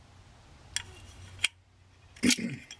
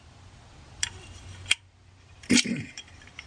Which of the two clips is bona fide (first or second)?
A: first